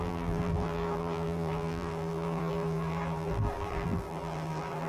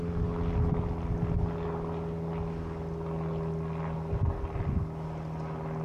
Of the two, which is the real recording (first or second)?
second